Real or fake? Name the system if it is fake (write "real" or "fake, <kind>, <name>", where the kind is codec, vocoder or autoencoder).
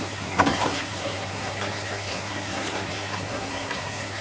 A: fake, codec, SNAC